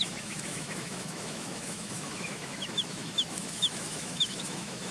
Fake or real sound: fake